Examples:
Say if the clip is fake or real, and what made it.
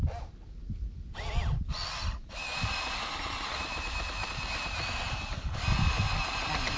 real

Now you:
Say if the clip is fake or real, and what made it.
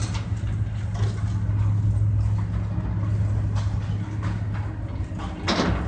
real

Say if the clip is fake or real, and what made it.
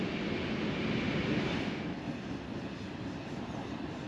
real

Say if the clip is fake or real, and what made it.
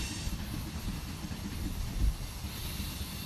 real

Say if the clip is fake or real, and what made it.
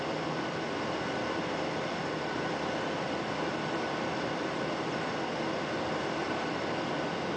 real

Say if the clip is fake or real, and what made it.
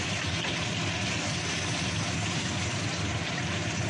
real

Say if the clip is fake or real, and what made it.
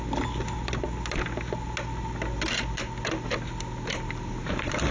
real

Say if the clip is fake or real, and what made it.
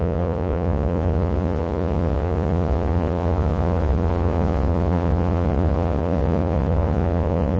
fake, vocoder, Vocos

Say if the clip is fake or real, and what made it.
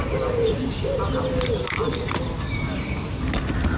real